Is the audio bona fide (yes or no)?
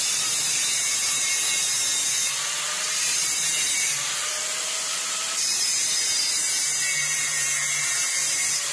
no